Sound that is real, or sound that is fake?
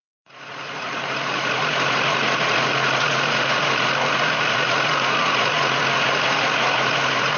fake